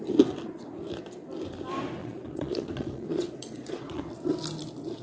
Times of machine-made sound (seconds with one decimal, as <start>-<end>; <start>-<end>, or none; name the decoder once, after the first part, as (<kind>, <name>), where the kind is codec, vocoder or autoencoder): 2.0-4.0 (vocoder, Vocos)